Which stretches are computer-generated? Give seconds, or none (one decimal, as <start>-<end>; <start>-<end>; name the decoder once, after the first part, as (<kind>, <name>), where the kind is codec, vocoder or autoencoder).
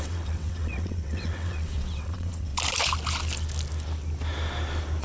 0.0-2.5 (vocoder, WaveNeXt)